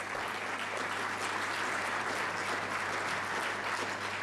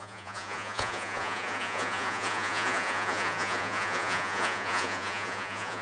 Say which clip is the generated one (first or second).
second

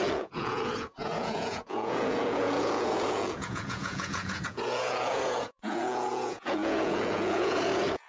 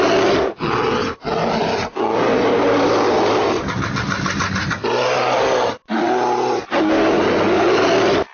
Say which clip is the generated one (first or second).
first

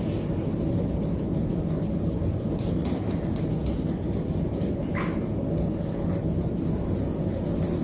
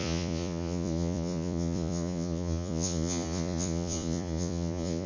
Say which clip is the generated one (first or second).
second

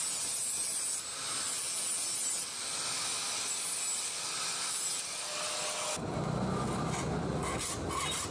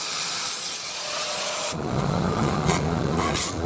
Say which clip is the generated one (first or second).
second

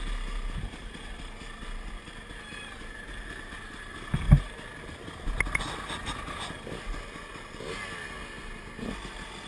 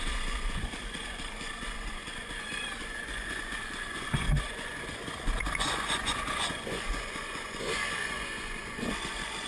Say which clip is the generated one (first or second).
second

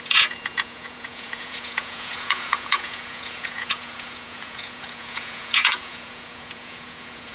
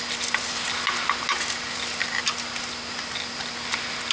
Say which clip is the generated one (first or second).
first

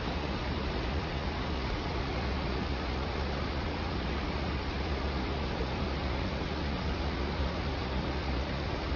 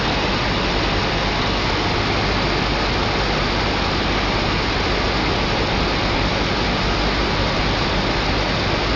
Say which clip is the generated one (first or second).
first